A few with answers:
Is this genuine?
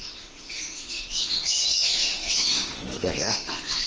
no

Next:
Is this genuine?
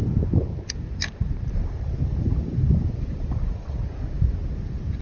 yes